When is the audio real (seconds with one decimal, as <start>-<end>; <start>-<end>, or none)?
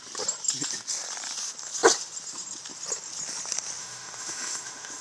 0.0-3.8